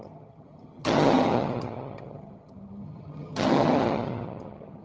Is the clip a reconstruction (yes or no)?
yes